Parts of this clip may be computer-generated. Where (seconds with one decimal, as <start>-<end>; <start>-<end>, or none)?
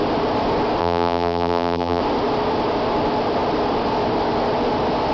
0.8-2.0